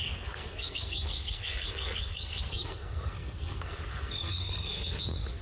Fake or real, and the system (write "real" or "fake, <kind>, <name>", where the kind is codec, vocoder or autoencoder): fake, codec, SNAC